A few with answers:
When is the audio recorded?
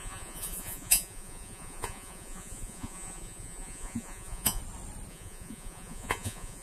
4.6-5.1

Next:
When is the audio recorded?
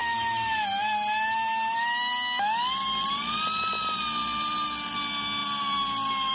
0.0-6.3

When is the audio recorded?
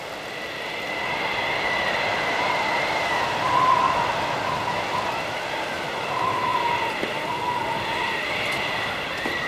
0.0-9.5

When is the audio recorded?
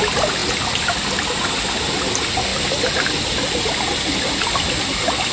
0.0-5.3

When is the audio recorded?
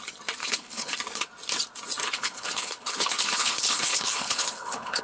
0.0-0.4; 1.0-2.0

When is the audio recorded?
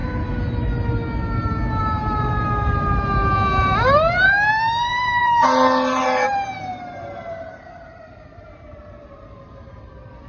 0.0-1.8